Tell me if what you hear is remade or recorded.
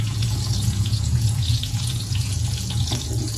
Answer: remade